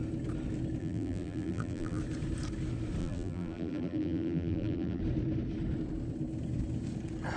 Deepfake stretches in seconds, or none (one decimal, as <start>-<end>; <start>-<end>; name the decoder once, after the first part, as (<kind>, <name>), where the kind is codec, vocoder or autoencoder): 0.8-2.0 (vocoder, BigVGAN v2); 3.0-5.0